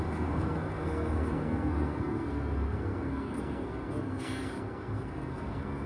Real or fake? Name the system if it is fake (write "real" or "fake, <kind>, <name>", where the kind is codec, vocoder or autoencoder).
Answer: fake, codec, SNAC